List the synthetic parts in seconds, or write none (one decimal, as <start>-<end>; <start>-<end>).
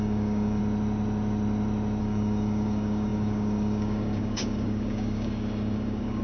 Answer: 0.0-0.6; 2.0-6.2